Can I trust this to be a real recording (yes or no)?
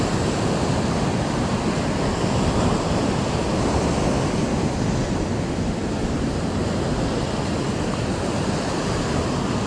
yes